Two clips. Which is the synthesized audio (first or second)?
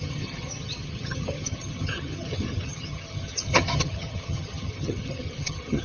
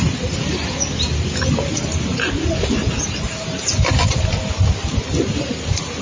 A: first